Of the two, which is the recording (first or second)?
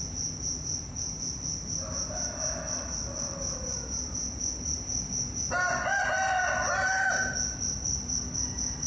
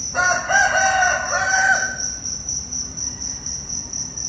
first